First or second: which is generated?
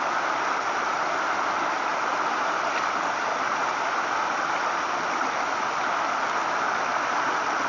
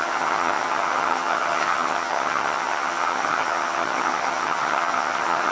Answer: second